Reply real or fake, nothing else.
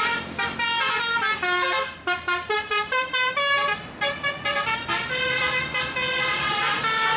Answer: real